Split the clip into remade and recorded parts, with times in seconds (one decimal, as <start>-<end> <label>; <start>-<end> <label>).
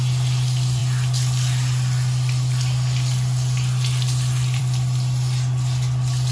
0.0-6.3 recorded